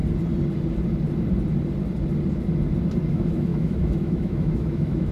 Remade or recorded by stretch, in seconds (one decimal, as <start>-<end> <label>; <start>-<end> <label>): 0.0-3.1 recorded; 3.1-5.1 remade